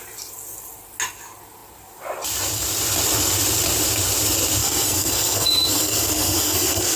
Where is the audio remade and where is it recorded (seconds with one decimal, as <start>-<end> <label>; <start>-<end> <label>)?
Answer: 0.0-4.6 recorded; 4.6-7.0 remade